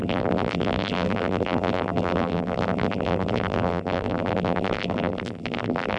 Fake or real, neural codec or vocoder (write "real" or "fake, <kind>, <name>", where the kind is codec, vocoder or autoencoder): fake, vocoder, BigVGAN v2